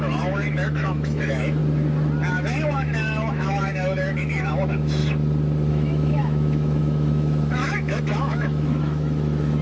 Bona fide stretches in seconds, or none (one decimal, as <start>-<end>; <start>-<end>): 1.6-2.3; 5.0-5.7